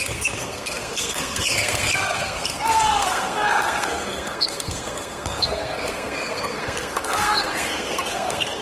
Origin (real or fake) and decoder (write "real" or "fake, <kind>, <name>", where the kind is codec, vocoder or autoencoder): fake, codec, SNAC